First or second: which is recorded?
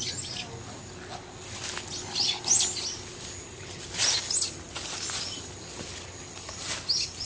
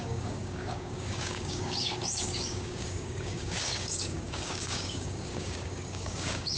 first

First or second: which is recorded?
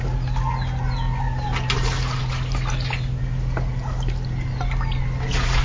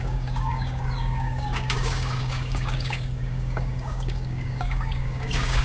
first